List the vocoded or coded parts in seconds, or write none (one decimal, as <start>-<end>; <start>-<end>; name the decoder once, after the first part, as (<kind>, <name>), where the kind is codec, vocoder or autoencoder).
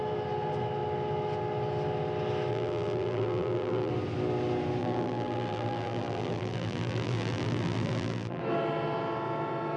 2.5-3.9 (vocoder, BigVGAN v2); 4.8-8.4